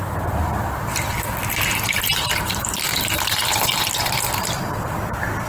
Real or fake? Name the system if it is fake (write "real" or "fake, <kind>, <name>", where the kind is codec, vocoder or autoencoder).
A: fake, vocoder, BigVGAN v2